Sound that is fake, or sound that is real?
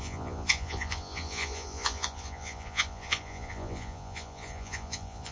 fake